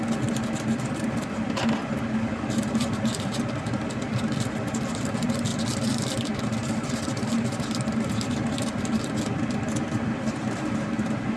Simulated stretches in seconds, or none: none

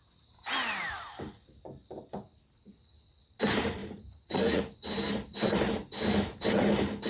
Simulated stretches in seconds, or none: 3.8-4.6 (vocoder, Vocos)